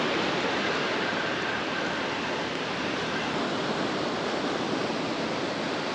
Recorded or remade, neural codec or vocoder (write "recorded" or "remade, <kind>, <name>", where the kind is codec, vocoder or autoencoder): recorded